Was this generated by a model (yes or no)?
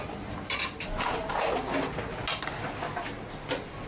no